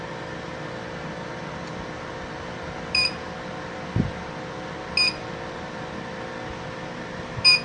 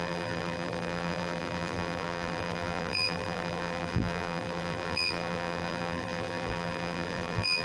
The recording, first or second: first